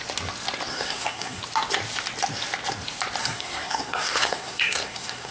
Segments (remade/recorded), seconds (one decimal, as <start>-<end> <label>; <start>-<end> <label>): 0.0-0.7 recorded; 0.7-1.4 remade; 1.4-3.2 recorded; 3.2-5.3 remade